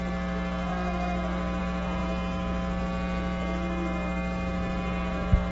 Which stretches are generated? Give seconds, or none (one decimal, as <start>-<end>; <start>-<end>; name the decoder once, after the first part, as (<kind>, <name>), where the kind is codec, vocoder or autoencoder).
0.0-5.5 (autoencoder, DAC-VAE)